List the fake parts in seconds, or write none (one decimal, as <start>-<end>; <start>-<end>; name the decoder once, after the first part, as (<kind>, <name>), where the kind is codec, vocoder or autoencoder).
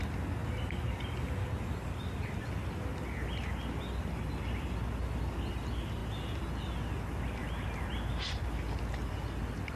none